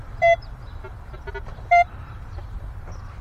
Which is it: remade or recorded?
remade